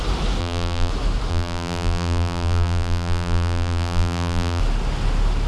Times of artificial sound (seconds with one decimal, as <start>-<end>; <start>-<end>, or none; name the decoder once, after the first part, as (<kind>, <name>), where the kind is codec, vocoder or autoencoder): 0.4-0.9 (vocoder, BigVGAN v2); 1.3-4.6